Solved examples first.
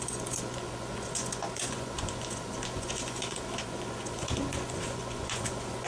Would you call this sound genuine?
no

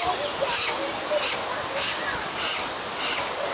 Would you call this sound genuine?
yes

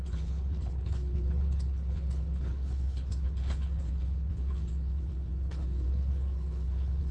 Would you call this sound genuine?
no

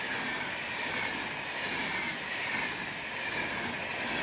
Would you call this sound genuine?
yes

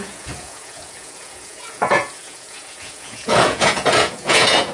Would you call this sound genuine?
no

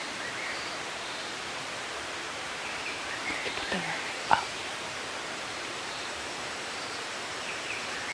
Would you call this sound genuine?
no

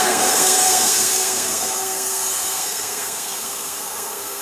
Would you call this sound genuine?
no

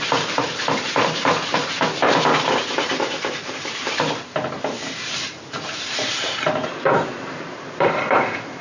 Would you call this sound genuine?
no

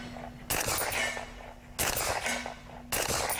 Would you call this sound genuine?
yes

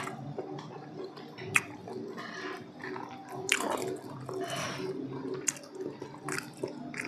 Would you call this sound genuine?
yes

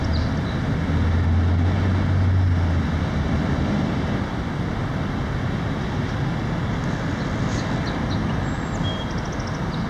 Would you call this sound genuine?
yes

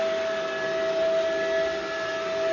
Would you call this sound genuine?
yes